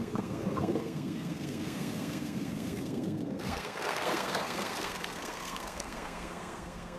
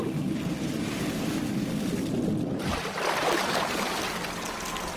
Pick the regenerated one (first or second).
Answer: first